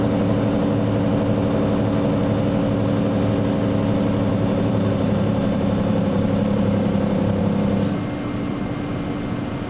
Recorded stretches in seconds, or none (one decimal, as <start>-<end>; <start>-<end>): 0.0-4.3; 7.4-9.7